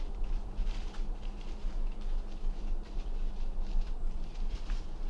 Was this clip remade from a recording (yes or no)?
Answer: yes